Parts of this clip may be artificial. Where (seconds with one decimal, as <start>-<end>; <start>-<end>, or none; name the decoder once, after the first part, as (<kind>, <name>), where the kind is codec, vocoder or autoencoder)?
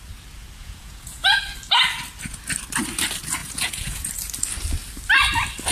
0.6-1.4 (vocoder, Vocos); 3.4-4.1